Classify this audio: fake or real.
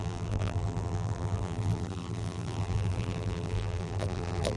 fake